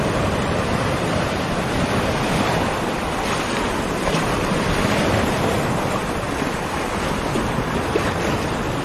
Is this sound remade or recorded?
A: recorded